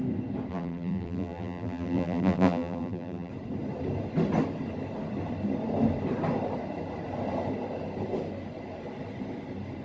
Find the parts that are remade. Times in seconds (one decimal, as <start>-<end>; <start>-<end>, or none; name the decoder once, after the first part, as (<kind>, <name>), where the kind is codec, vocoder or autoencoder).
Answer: 0.5-3.3 (vocoder, BigVGAN v2)